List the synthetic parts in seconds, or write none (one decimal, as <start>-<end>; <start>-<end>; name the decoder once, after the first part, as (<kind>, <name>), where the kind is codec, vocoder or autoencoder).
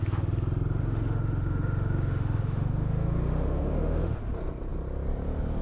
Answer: 0.8-4.2 (autoencoder, DAC-VAE)